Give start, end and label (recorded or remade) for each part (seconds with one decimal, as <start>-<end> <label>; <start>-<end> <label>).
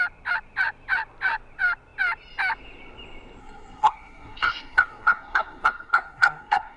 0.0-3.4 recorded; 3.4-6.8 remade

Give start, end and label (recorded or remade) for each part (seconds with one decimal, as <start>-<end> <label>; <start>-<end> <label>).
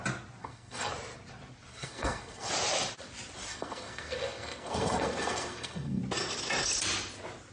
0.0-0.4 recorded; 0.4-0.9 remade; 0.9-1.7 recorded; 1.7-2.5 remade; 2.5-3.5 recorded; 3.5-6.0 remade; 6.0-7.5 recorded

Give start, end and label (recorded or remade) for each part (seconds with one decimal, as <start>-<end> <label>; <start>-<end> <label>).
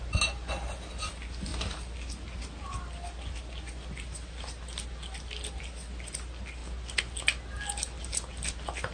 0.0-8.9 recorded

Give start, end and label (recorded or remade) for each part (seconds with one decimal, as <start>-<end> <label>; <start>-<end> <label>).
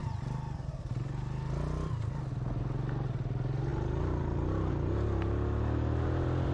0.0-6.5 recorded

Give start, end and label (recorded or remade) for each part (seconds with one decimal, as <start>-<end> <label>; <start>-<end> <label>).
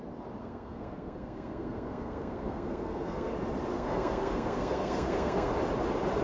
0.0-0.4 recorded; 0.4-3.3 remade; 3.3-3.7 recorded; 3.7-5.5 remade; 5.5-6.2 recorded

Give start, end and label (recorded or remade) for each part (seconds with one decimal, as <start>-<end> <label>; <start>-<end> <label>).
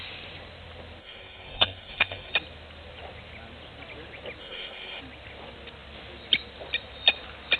0.0-1.0 recorded; 1.0-2.3 remade; 2.3-4.4 recorded; 4.4-5.0 remade; 5.0-7.6 recorded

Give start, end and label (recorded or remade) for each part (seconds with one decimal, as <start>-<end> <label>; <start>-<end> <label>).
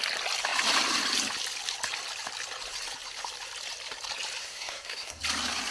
0.0-4.4 recorded; 4.4-5.2 remade; 5.2-5.7 recorded